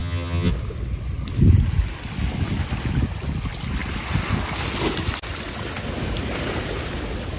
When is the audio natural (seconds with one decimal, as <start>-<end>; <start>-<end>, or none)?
0.5-7.4